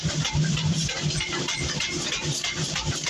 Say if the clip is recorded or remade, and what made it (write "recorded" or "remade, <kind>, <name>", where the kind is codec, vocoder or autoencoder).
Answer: remade, vocoder, BigVGAN v2